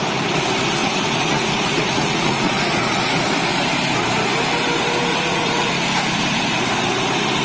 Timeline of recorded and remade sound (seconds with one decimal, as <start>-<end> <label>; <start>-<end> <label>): 0.0-0.8 recorded; 0.8-3.1 remade; 3.1-5.1 recorded; 5.1-5.7 remade; 5.7-7.4 recorded